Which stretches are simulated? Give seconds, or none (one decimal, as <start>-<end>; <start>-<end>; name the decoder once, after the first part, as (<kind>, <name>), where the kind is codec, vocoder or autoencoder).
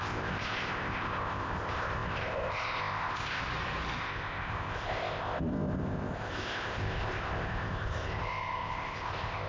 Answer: 0.0-3.4 (codec, ZipCodec); 4.0-9.5